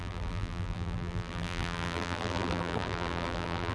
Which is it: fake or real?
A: fake